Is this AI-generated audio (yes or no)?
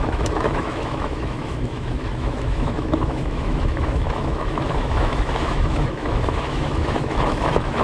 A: yes